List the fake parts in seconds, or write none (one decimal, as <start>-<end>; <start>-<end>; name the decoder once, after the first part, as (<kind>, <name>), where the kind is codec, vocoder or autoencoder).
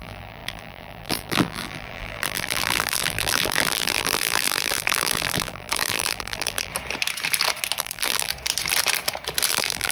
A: 0.0-6.7 (vocoder, BigVGAN v2); 7.8-8.3; 9.5-9.9